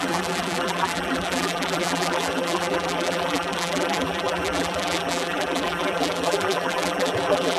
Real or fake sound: fake